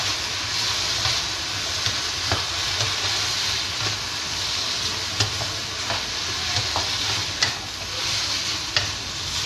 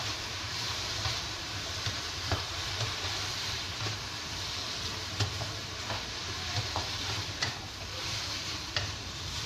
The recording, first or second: first